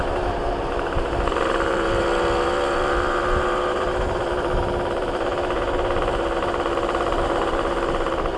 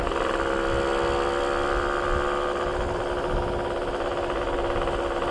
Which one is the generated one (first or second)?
first